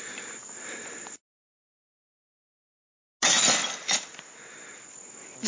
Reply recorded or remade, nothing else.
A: recorded